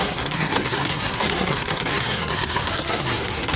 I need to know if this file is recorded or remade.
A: remade